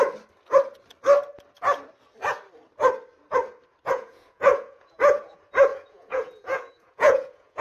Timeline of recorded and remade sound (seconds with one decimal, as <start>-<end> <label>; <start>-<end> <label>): 0.0-3.9 recorded; 3.9-7.6 remade